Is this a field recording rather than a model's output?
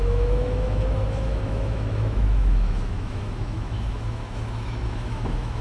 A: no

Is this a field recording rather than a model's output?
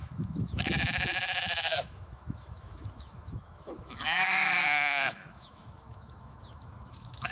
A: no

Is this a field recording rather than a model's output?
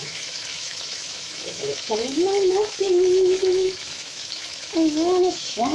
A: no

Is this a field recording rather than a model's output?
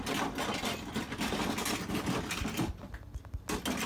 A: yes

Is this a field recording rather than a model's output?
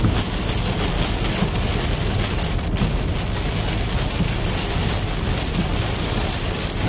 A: yes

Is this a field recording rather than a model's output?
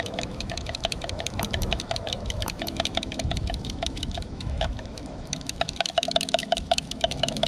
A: no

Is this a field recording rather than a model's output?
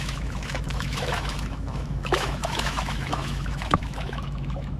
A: no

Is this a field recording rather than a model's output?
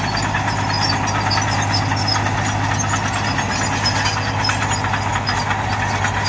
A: yes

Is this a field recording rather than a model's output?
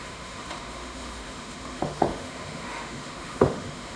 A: no